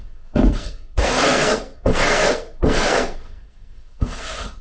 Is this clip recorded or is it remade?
remade